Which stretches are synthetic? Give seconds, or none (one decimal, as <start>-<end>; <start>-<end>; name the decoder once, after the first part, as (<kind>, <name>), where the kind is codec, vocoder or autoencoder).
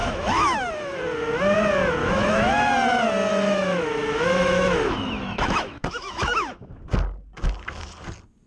0.0-1.0 (autoencoder, DAC-VAE); 2.0-2.7; 3.3-6.7